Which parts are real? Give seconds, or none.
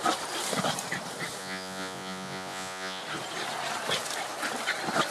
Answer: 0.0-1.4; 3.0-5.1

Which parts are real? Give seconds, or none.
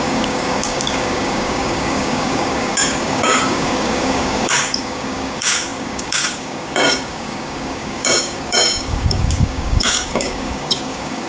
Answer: none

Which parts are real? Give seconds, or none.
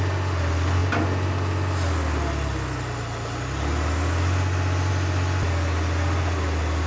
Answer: 0.0-6.9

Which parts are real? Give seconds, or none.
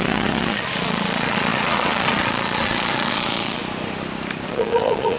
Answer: 3.6-4.5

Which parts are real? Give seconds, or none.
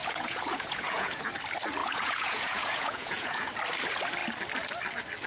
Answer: 1.2-1.8; 3.5-5.3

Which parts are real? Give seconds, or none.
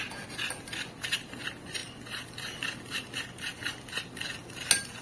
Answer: 0.0-5.0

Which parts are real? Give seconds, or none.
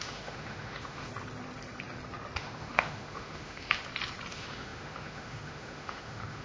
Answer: 1.1-2.4; 3.8-4.3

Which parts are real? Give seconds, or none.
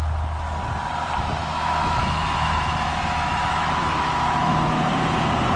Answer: 0.0-1.4; 4.8-5.6